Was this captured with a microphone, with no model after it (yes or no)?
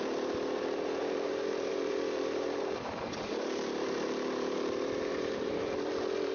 no